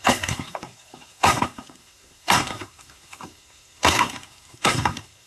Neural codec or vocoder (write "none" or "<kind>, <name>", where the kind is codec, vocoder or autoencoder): codec, SNAC